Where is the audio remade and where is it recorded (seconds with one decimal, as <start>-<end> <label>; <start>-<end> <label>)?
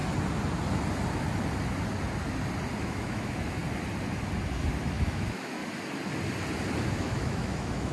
0.0-2.8 recorded; 2.8-3.6 remade; 3.6-4.8 recorded; 4.8-5.6 remade; 5.6-6.9 recorded; 6.9-7.9 remade